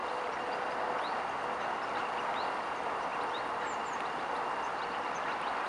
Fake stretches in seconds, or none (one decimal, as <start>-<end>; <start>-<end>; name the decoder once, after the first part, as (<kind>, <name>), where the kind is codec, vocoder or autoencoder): none